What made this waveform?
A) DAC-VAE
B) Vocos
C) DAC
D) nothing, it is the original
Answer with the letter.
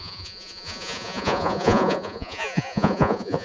B